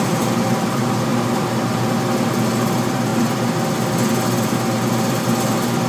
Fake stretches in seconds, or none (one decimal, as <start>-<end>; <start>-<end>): none